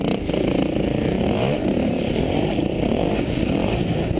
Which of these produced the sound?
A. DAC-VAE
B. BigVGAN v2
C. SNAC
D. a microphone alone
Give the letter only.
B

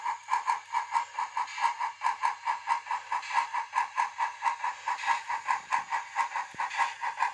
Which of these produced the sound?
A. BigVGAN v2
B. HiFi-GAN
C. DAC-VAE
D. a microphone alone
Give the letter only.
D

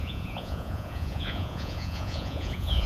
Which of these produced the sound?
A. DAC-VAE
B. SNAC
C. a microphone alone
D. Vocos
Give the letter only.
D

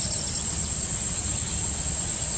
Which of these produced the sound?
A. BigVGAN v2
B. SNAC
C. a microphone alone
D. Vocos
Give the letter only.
C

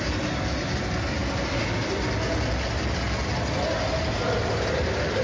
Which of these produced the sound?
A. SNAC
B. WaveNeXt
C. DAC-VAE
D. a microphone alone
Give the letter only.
D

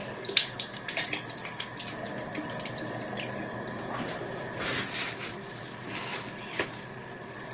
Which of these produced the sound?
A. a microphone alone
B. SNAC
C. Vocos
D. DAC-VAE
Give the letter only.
A